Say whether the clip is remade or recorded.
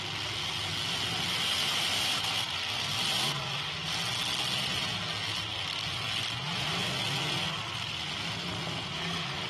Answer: recorded